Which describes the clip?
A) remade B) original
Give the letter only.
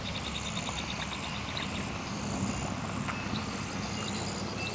B